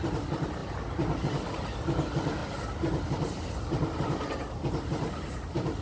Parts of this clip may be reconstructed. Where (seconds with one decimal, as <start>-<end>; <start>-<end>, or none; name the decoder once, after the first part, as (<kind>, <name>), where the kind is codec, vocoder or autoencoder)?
none

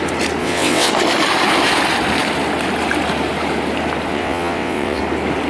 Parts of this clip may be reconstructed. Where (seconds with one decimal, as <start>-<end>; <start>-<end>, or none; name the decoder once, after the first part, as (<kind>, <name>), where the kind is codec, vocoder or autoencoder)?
0.4-0.9 (vocoder, WaveNeXt); 4.1-5.0

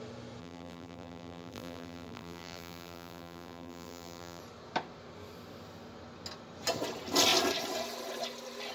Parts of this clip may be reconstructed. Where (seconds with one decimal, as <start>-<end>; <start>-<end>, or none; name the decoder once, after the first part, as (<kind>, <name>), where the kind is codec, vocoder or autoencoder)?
0.4-4.4 (vocoder, BigVGAN v2)